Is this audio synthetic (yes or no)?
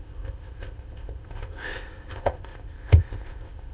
yes